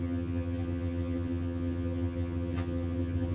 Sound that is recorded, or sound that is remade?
remade